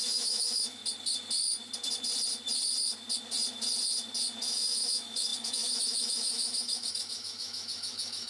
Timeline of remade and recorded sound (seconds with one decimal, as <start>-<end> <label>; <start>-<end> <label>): 0.0-0.8 remade; 0.8-4.4 recorded; 4.4-8.3 remade